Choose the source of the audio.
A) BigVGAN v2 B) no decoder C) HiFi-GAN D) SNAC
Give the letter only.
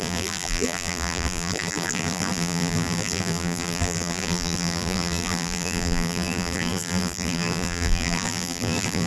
A